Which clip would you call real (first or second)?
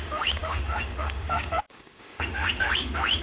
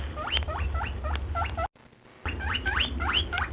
second